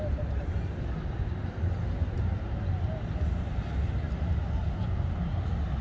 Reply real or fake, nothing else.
real